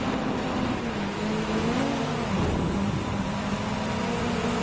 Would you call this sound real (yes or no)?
yes